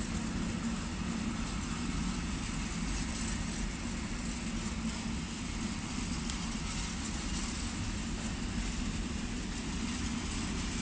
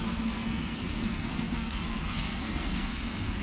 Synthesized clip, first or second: second